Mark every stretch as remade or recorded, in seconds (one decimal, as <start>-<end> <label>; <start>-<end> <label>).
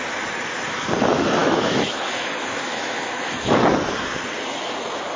0.0-1.4 recorded; 1.4-3.6 remade; 3.6-5.2 recorded